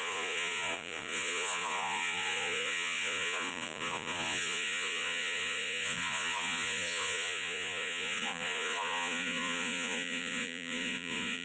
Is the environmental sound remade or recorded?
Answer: remade